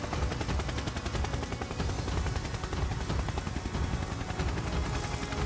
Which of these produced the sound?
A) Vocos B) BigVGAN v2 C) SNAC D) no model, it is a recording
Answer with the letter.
D